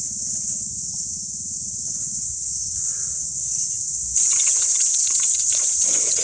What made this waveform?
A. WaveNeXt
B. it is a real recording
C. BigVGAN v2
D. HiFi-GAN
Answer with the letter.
A